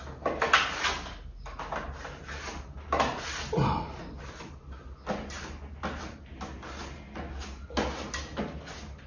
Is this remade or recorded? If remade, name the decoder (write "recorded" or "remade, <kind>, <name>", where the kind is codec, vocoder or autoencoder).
recorded